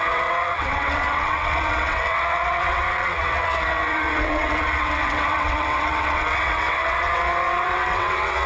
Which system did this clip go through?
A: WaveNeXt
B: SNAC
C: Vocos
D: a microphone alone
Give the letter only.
A